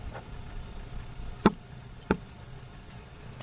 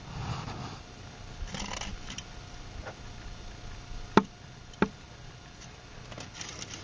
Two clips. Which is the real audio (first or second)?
second